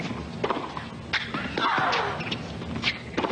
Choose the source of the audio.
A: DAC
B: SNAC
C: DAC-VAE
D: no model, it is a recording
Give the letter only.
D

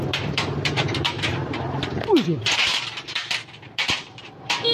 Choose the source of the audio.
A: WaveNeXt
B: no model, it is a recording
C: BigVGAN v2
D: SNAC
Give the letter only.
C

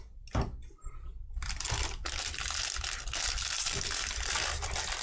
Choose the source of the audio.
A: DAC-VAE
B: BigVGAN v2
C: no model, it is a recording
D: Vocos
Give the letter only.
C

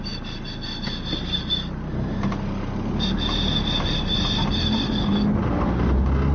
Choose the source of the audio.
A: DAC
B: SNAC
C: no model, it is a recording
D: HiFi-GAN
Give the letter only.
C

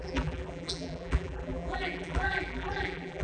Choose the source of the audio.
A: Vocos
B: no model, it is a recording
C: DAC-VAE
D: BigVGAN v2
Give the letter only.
D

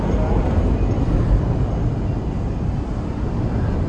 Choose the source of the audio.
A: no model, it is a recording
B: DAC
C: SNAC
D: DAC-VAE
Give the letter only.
A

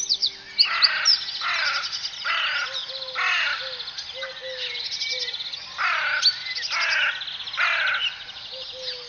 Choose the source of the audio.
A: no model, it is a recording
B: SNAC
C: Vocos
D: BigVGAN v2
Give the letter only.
A